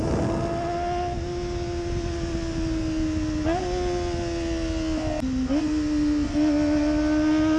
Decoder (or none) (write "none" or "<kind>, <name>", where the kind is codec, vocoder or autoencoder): none